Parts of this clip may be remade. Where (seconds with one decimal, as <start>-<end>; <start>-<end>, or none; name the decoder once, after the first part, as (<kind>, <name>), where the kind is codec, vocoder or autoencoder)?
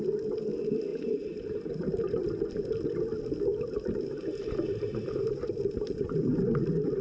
0.9-2.2 (vocoder, BigVGAN v2); 3.5-6.3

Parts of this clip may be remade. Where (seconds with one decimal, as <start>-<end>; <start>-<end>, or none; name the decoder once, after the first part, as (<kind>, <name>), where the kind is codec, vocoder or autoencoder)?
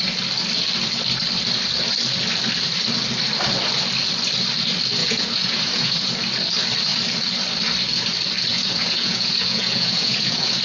5.0-6.1 (vocoder, Vocos); 8.5-10.6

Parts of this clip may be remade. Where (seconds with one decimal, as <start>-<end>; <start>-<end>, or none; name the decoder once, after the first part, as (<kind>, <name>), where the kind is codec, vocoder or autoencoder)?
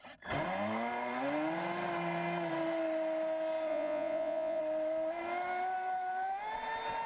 3.7-4.6 (vocoder, Vocos)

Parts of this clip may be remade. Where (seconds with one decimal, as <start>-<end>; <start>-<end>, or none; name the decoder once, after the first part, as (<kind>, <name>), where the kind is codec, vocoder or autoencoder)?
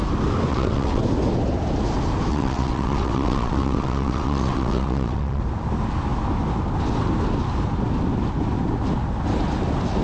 0.5-1.0 (vocoder, WaveNeXt); 2.3-5.4